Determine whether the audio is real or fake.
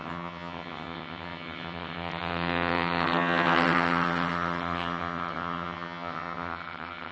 fake